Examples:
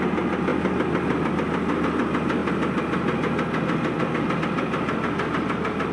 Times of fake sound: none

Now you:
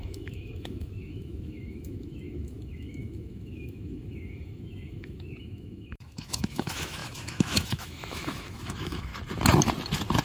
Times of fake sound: 0.0-9.1 (autoencoder, DAC-VAE)

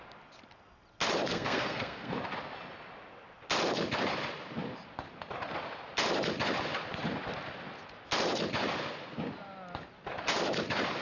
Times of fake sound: 1.3-2.1 (codec, SNAC)

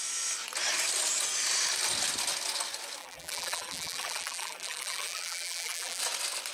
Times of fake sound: 3.0-6.0 (vocoder, BigVGAN v2)

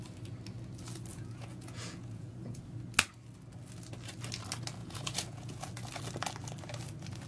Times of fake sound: 1.1-2.6 (vocoder, Vocos); 4.8-5.7

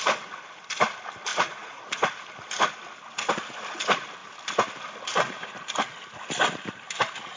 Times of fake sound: 1.3-1.8 (vocoder, Vocos)